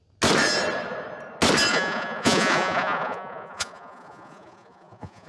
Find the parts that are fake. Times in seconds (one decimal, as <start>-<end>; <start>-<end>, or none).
1.7-5.3